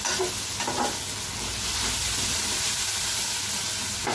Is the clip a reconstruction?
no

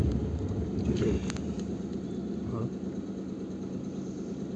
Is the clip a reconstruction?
no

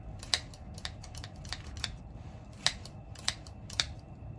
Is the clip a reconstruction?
no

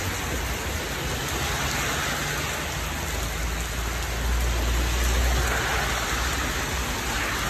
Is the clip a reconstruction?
no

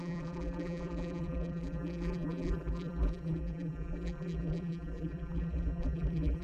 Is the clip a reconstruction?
yes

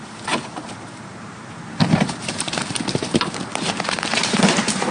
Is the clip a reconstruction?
yes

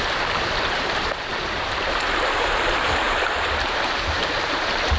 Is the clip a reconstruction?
yes